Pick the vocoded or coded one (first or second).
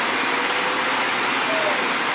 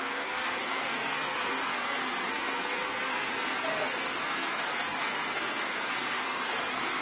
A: second